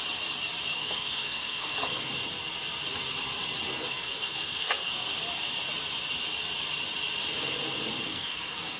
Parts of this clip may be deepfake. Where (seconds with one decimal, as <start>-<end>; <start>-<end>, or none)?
0.7-2.0; 3.9-5.2; 8.1-8.8